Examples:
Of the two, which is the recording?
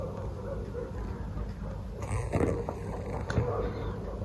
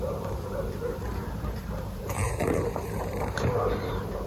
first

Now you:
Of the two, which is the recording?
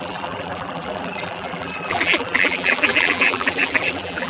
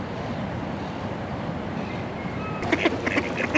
second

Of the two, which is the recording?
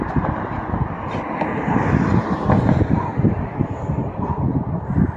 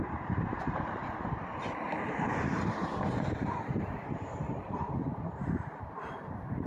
first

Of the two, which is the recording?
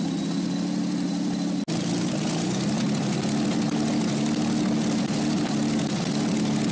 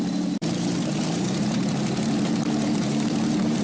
first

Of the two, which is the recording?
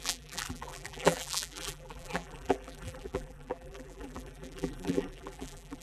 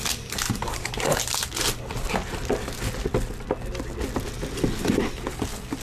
second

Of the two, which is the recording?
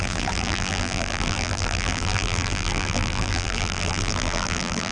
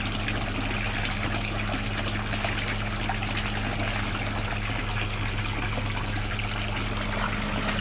second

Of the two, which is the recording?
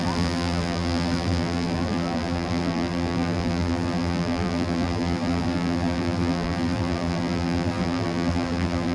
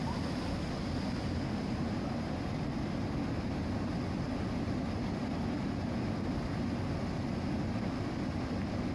second